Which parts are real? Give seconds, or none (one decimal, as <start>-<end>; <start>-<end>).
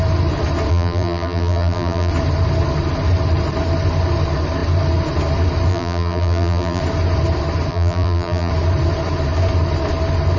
0.0-0.7; 2.1-5.7; 6.8-7.7; 8.5-10.4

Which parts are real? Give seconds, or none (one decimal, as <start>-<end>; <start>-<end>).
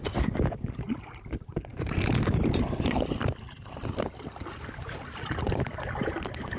0.0-1.7; 5.7-6.6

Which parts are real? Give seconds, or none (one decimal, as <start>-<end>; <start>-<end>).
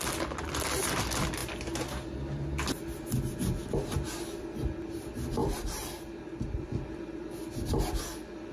0.0-8.5